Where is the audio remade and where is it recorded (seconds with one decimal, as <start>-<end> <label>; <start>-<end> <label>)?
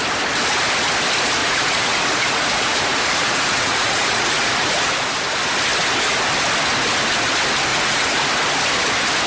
0.0-1.4 recorded; 1.4-4.9 remade; 4.9-7.7 recorded; 7.7-8.3 remade; 8.3-9.3 recorded